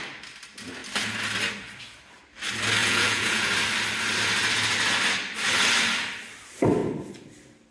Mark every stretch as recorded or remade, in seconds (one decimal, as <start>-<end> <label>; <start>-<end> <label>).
0.0-2.8 recorded; 2.8-3.5 remade; 3.5-7.7 recorded